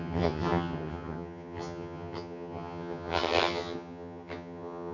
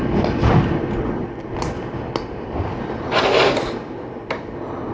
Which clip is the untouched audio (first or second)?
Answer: second